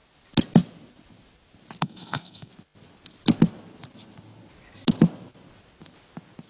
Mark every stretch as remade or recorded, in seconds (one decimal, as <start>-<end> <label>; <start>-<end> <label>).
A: 0.0-1.8 recorded; 1.8-2.5 remade; 2.5-6.5 recorded